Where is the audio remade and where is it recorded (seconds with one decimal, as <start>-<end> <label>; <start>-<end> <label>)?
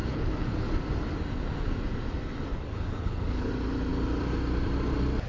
0.0-0.7 remade; 0.7-2.5 recorded; 2.5-3.5 remade; 3.5-5.3 recorded